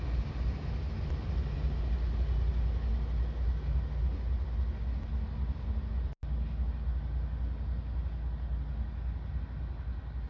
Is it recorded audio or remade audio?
recorded